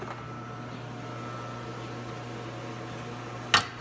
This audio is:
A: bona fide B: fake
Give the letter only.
A